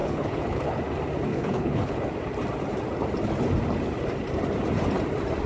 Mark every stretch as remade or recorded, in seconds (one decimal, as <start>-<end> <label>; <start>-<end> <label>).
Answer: 0.0-0.8 remade; 0.8-1.3 recorded; 1.3-2.0 remade; 2.0-5.5 recorded